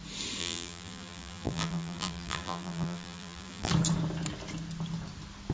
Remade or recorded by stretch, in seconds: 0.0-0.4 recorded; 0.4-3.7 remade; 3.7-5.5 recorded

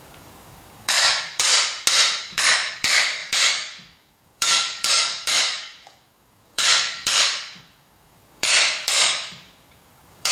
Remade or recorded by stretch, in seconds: 0.0-1.5 remade; 1.5-2.2 recorded; 2.2-10.3 remade

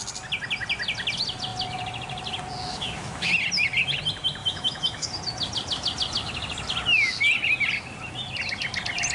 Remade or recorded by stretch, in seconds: 0.0-2.7 recorded; 2.7-3.3 remade; 3.3-4.4 recorded; 4.4-5.1 remade; 5.1-9.1 recorded

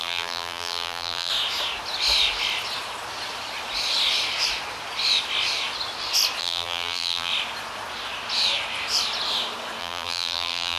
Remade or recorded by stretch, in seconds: 0.0-1.3 remade; 1.3-6.4 recorded; 6.4-7.3 remade; 7.3-9.8 recorded; 9.8-10.8 remade

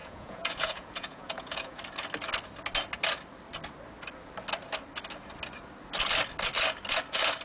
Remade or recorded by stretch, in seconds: 0.0-1.8 remade; 1.8-7.4 recorded

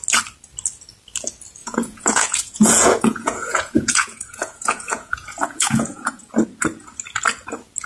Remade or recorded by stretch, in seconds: 0.0-1.6 recorded; 1.6-6.3 remade; 6.3-7.9 recorded